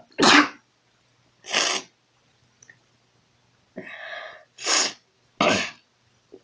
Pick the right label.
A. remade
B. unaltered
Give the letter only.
B